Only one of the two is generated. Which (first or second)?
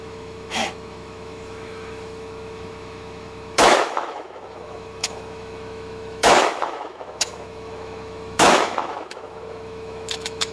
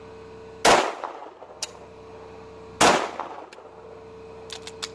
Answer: first